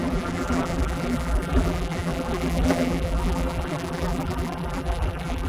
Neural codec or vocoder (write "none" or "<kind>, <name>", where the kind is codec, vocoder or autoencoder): vocoder, BigVGAN v2